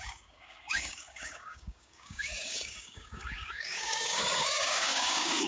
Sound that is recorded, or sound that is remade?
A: remade